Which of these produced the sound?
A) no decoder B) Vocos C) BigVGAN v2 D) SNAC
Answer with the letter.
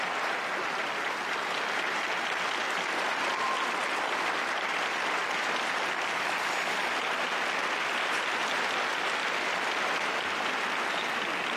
A